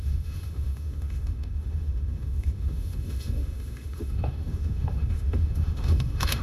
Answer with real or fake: fake